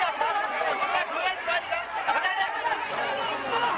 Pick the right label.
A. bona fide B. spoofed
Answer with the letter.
B